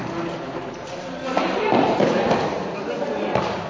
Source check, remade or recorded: recorded